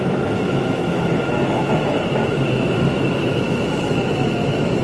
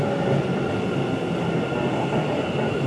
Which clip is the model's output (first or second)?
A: first